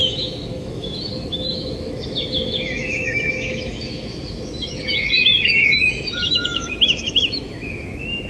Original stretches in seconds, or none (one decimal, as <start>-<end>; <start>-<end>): none